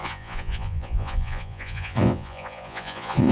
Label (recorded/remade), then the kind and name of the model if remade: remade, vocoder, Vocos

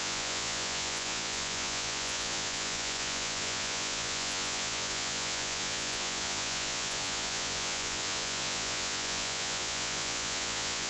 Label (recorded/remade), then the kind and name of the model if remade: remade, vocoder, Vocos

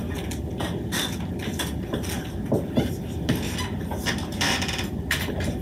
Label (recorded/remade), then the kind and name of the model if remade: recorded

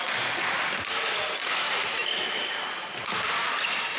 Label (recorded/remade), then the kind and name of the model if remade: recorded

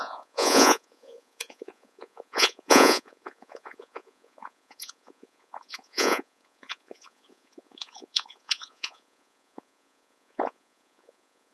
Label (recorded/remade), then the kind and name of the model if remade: remade, vocoder, Vocos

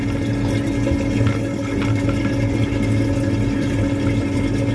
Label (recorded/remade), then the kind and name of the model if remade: recorded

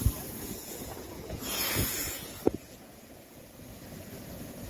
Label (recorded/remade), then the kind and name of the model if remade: remade, vocoder, Vocos